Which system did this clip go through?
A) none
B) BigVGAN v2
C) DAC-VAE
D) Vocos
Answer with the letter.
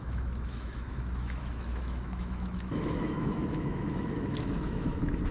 C